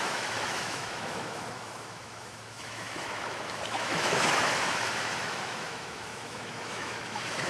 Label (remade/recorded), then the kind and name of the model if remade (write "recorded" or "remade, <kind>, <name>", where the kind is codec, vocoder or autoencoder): remade, autoencoder, DAC-VAE